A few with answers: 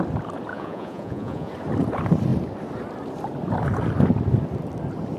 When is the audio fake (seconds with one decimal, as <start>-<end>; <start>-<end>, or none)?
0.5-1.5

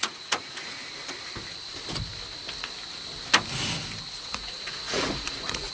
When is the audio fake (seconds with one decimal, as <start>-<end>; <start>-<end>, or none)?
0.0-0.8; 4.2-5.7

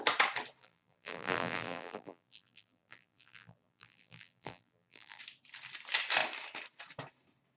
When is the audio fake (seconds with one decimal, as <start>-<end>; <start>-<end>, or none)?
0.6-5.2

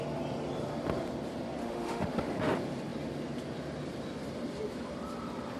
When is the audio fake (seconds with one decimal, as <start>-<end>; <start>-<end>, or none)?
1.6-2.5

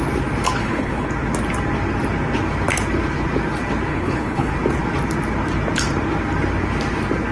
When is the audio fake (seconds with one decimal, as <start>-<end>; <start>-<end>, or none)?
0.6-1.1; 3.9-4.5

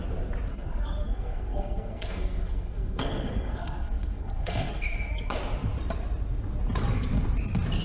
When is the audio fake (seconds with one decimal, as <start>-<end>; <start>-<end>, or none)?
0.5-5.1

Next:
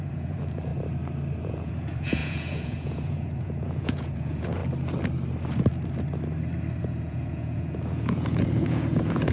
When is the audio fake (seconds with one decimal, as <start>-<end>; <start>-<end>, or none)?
0.0-0.7; 1.4-4.6; 6.8-9.3